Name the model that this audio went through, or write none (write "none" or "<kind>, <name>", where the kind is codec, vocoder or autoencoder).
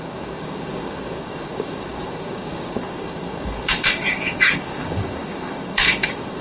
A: codec, DAC